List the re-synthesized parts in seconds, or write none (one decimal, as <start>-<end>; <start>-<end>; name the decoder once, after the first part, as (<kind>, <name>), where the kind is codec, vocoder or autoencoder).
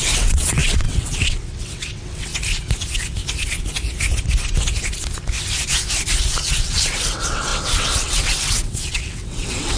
0.0-2.3 (vocoder, WaveNeXt); 6.2-9.8